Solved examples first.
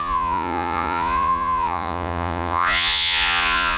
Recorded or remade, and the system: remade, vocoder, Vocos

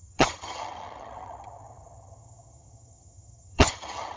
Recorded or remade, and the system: remade, vocoder, HiFi-GAN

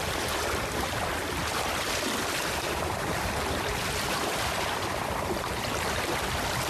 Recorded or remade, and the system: remade, vocoder, BigVGAN v2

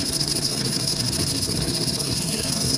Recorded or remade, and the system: remade, codec, SNAC